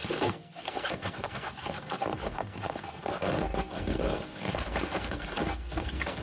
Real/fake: fake